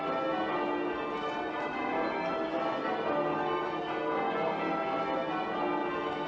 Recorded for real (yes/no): yes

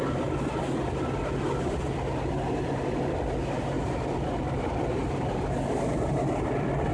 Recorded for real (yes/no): yes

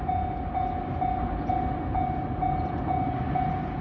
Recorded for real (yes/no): yes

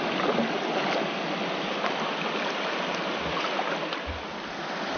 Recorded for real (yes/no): yes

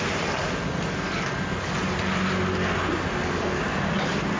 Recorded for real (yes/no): yes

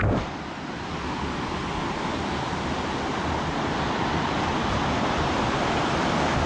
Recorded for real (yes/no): yes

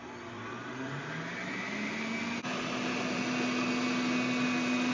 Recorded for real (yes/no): yes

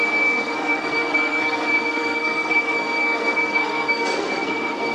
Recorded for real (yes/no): no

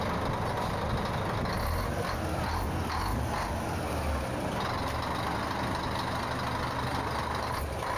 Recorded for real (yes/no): yes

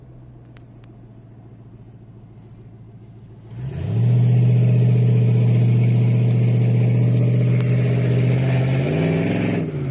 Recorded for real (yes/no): yes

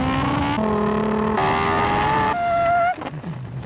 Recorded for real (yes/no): yes